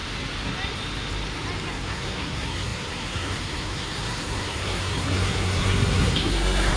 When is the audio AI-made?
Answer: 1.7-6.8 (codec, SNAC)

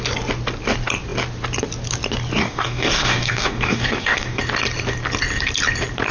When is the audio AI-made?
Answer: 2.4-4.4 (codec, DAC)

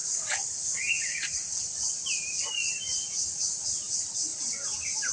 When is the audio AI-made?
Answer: 0.0-1.6 (vocoder, Vocos); 2.9-3.9